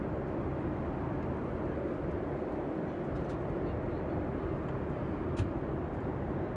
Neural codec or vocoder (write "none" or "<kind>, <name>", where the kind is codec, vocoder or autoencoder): none